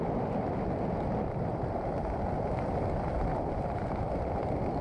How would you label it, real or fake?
real